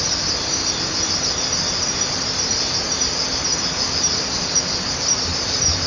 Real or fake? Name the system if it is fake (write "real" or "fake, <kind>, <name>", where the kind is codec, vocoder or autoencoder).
real